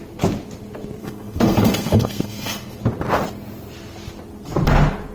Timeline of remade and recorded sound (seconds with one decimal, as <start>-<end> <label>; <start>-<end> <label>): 0.0-1.0 recorded; 1.0-2.8 remade; 2.8-5.1 recorded